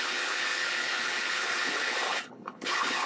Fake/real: fake